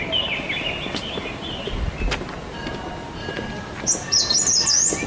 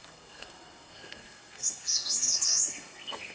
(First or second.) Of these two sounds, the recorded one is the first